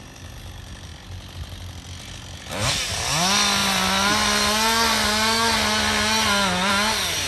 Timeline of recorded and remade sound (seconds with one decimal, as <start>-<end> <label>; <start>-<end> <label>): 0.0-7.3 recorded